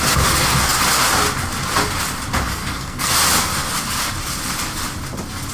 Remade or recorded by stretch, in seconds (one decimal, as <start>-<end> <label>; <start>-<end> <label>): 0.0-2.6 recorded; 2.6-3.1 remade; 3.1-5.5 recorded